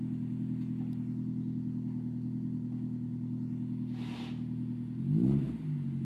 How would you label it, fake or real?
real